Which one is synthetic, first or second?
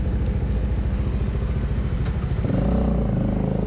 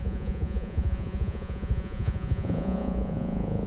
second